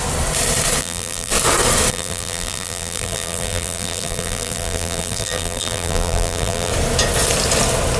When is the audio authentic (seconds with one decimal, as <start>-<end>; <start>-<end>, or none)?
0.0-0.8; 1.3-1.9; 6.7-8.0